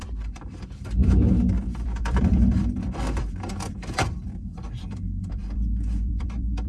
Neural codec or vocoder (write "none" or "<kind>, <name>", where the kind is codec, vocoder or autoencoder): vocoder, BigVGAN v2